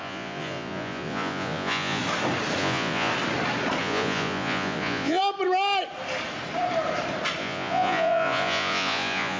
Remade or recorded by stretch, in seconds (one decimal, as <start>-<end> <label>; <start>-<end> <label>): 0.0-2.0 remade; 2.0-2.6 recorded; 2.6-3.1 remade; 3.1-3.8 recorded; 3.8-5.2 remade; 5.2-7.4 recorded; 7.4-9.4 remade